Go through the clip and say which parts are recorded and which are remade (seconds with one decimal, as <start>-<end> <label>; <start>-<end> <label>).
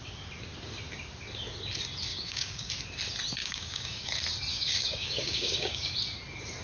0.0-2.1 recorded; 2.1-2.7 remade; 2.7-3.4 recorded; 3.4-4.1 remade; 4.1-4.5 recorded; 4.5-5.9 remade; 5.9-6.6 recorded